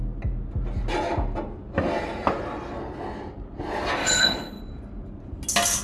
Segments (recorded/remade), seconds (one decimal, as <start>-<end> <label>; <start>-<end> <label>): 0.0-4.0 recorded; 4.0-4.6 remade; 4.6-5.8 recorded